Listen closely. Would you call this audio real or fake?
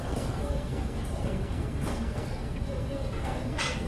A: fake